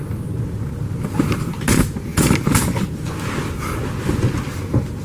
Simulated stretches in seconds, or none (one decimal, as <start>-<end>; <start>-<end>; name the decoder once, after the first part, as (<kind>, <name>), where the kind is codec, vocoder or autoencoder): none

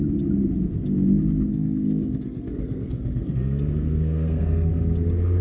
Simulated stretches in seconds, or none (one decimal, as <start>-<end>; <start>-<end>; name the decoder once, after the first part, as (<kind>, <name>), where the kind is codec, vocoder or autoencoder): 1.5-4.7 (codec, SNAC)

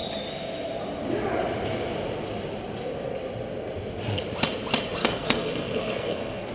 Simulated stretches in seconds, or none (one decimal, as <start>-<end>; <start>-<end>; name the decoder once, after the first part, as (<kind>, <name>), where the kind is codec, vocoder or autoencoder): 5.0-6.5 (codec, SNAC)

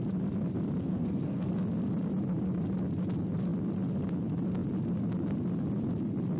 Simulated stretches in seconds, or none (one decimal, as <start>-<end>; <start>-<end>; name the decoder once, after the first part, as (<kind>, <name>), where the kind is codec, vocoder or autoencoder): 0.8-1.5 (codec, SNAC)